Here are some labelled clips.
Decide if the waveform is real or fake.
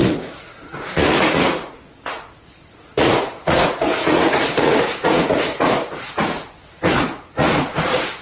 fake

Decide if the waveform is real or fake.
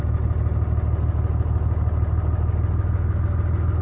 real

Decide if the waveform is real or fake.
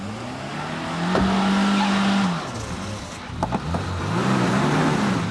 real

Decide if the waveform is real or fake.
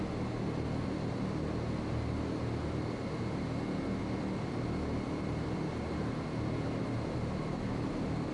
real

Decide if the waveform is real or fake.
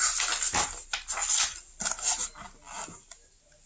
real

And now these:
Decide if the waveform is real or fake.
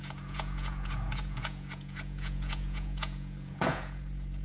fake